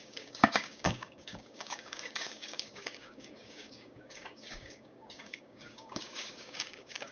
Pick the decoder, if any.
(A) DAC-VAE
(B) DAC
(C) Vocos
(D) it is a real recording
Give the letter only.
B